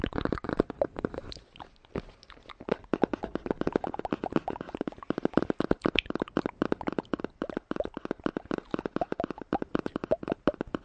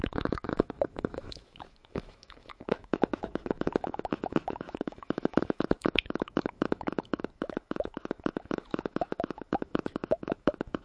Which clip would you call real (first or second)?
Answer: first